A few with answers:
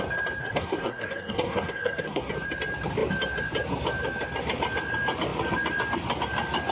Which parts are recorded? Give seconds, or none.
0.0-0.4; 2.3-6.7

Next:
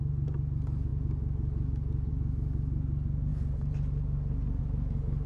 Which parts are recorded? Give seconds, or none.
0.0-5.3